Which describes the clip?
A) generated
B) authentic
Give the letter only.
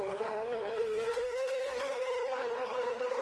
A